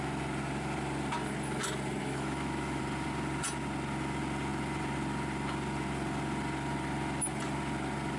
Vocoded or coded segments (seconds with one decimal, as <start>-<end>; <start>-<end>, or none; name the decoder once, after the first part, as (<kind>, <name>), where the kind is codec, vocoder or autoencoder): 2.0-2.8 (autoencoder, DAC-VAE)